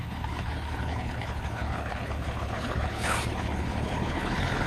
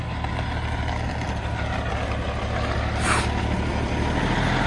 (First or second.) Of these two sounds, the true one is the second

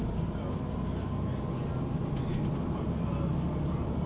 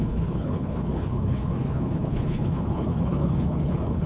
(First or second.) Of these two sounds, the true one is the first